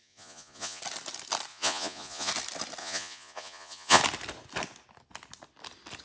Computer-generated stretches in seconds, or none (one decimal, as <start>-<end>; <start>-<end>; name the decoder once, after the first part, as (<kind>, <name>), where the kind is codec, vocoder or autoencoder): 0.0-0.8 (vocoder, Vocos); 1.5-2.3; 2.8-4.0